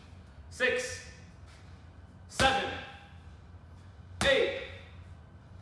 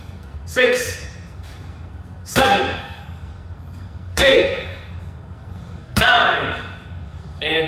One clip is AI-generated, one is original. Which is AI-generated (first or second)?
second